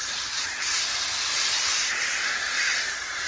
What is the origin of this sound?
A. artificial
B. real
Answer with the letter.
A